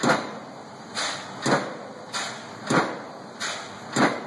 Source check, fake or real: real